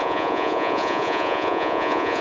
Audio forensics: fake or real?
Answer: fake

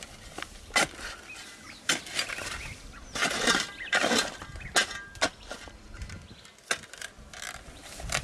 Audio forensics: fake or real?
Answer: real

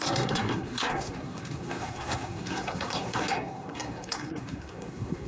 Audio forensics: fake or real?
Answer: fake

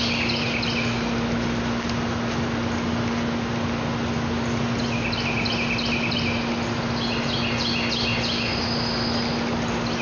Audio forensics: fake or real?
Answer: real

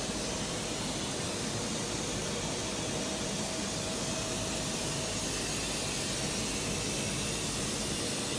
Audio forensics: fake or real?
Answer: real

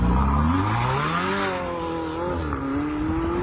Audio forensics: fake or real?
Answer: real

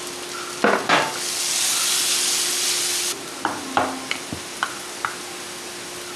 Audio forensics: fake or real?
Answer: real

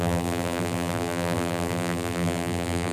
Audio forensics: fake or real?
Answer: fake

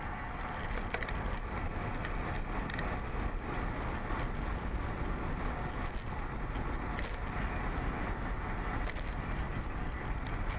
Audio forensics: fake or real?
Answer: real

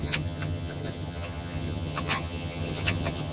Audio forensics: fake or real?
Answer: fake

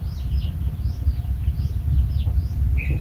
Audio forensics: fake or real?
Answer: real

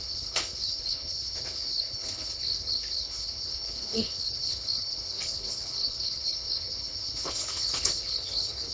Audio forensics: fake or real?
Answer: fake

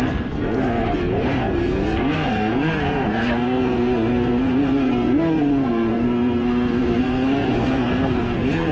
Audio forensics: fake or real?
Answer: fake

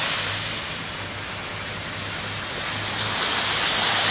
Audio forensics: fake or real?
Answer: real